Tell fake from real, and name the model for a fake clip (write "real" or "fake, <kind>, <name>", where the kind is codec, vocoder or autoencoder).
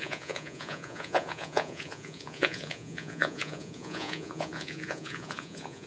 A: fake, vocoder, Vocos